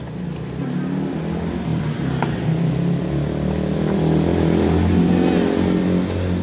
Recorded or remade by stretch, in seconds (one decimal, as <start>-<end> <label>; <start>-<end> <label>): 0.0-1.7 recorded; 1.7-2.7 remade; 2.7-4.3 recorded; 4.3-5.1 remade; 5.1-6.4 recorded